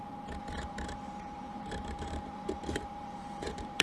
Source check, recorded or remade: remade